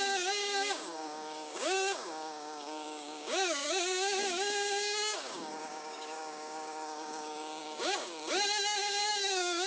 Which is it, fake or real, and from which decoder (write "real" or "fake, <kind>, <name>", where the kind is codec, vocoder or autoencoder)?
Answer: fake, codec, DAC